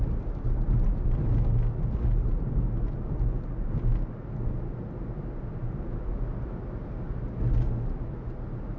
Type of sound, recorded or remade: recorded